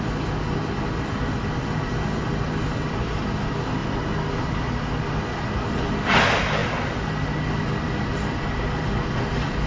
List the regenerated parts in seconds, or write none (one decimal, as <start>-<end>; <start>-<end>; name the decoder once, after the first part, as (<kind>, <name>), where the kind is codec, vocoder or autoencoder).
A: none